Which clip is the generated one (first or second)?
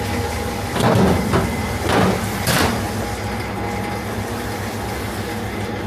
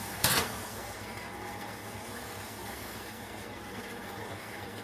second